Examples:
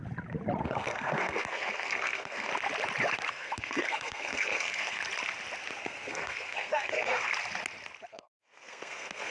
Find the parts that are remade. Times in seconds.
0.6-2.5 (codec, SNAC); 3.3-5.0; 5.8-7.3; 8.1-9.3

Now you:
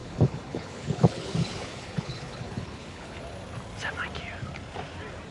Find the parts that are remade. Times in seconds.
0.0-3.2 (codec, HILCodec)

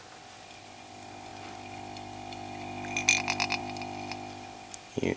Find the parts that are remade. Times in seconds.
none

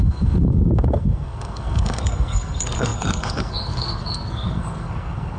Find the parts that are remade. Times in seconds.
0.0-5.4 (codec, SNAC)